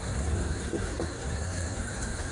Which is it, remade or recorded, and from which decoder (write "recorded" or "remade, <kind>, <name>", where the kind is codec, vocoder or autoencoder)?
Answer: remade, codec, SNAC